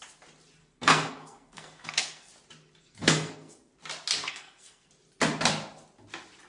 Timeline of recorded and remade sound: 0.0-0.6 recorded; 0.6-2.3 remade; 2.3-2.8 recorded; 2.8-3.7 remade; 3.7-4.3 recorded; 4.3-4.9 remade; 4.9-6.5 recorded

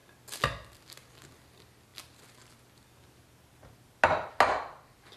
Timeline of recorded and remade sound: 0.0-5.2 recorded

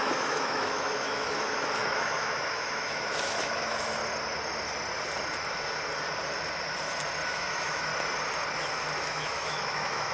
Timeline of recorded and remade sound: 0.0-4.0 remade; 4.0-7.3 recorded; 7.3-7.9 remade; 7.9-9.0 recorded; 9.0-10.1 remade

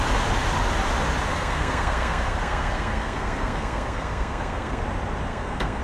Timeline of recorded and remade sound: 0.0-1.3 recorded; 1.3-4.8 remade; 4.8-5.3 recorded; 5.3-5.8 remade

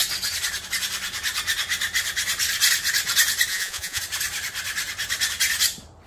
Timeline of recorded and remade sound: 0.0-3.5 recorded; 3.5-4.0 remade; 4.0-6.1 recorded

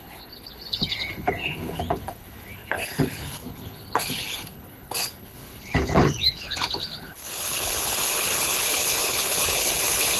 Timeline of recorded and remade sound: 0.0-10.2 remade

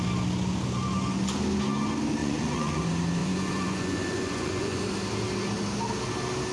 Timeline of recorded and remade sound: 0.0-2.2 recorded; 2.2-2.8 remade; 2.8-3.2 recorded; 3.2-4.8 remade; 4.8-6.5 recorded

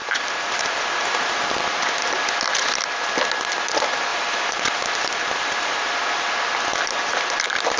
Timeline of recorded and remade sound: 0.0-1.5 remade; 1.5-4.1 recorded; 4.1-5.9 remade; 5.9-7.8 recorded